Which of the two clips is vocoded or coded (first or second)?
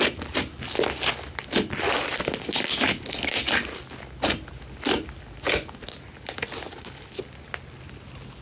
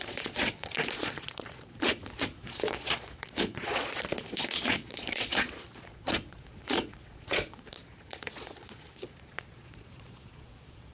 second